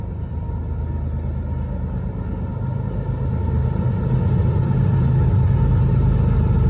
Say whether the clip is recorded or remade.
recorded